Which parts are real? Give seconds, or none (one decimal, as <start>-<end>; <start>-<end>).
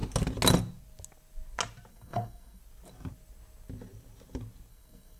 0.0-1.9; 2.6-4.7